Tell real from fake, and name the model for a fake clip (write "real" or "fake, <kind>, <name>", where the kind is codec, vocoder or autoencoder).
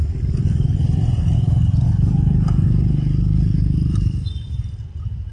fake, vocoder, BigVGAN v2